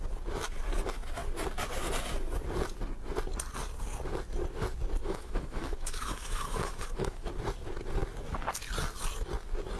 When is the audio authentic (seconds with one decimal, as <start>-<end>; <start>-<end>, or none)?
0.0-5.0; 7.3-9.8